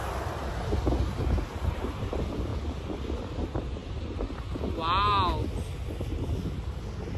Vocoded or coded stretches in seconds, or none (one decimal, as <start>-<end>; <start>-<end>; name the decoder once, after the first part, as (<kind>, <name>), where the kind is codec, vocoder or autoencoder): 1.7-2.5 (vocoder, BigVGAN v2); 3.4-3.8